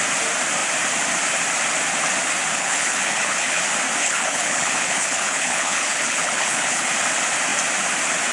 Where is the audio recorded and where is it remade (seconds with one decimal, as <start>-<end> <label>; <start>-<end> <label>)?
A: 0.0-2.5 recorded; 2.5-3.6 remade; 3.6-4.0 recorded; 4.0-6.9 remade; 6.9-8.3 recorded